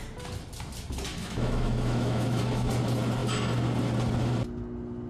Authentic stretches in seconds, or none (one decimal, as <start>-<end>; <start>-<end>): 0.0-1.1; 2.7-5.1